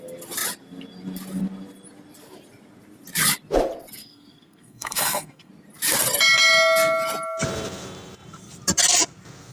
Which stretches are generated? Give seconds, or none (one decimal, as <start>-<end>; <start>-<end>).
4.0-5.5